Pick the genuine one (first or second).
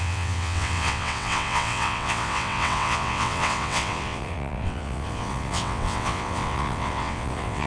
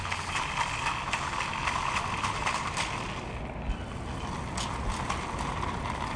second